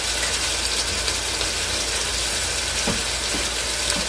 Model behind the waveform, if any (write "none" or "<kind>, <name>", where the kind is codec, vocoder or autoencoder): none